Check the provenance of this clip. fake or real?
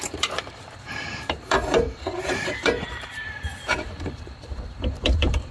fake